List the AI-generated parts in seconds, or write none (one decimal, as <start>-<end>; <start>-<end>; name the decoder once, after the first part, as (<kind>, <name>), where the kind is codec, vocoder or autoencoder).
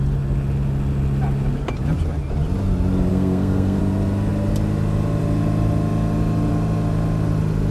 3.1-3.8 (codec, SNAC)